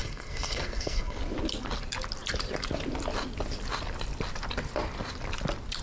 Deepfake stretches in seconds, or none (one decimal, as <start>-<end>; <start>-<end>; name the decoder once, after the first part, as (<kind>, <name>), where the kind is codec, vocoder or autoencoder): 0.0-1.2 (codec, SNAC)